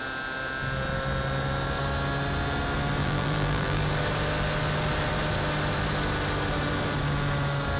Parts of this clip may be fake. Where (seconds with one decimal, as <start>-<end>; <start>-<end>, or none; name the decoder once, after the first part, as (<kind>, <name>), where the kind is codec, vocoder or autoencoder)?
3.0-3.8 (vocoder, BigVGAN v2)